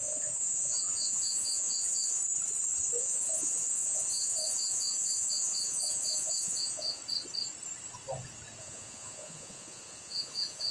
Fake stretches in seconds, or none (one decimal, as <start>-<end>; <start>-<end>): 0.0-2.2; 3.0-7.0; 8.6-10.7